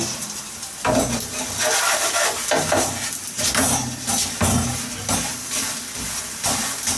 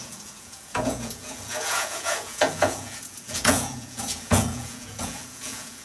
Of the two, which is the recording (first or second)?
first